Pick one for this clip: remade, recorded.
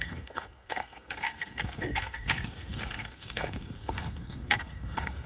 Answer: remade